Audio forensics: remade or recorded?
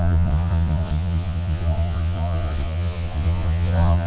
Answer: remade